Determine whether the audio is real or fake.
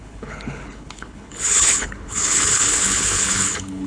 fake